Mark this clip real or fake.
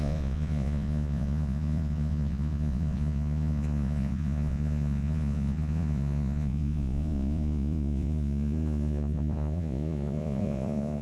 fake